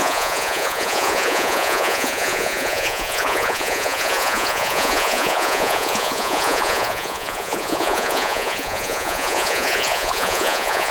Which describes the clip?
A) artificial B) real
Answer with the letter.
A